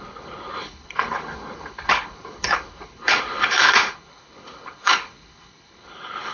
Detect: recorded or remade remade